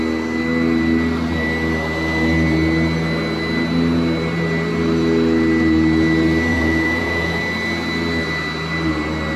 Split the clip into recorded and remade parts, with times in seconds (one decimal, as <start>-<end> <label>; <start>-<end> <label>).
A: 0.0-6.5 recorded; 6.5-7.4 remade; 7.4-9.4 recorded